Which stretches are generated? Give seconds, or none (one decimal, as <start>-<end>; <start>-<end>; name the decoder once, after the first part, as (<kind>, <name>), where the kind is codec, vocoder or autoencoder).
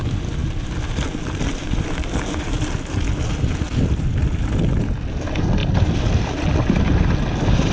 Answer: none